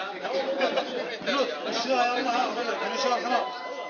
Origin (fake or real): real